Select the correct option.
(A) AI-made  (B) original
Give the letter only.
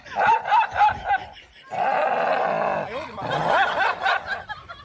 B